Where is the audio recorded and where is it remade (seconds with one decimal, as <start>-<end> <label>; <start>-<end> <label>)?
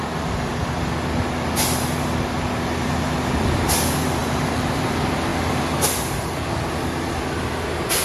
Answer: 0.0-4.2 recorded; 4.2-4.8 remade; 4.8-8.0 recorded